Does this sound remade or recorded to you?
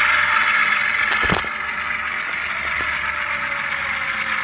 recorded